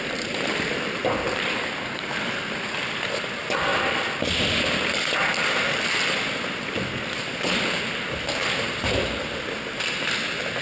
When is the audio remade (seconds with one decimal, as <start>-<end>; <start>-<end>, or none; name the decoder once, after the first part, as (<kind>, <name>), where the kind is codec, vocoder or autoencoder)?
none